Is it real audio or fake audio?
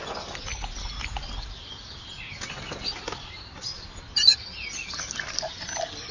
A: real